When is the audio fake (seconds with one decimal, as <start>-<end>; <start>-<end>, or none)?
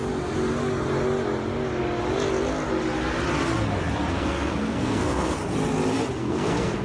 4.1-5.4; 6.2-6.8